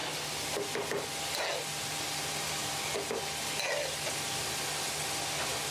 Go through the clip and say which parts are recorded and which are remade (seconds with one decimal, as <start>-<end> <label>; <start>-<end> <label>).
0.0-5.7 recorded